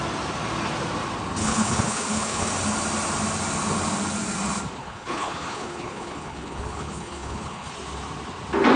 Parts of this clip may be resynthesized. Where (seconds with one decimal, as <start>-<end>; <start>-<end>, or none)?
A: 1.4-2.5; 4.8-7.7